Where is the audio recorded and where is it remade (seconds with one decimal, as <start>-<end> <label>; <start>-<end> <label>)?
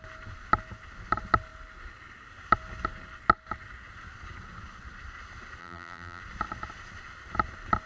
0.0-5.6 recorded; 5.6-6.2 remade; 6.2-7.9 recorded